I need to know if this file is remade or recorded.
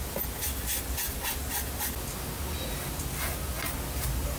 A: recorded